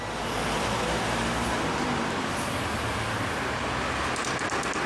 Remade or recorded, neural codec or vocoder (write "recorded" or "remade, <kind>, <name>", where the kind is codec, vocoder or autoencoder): recorded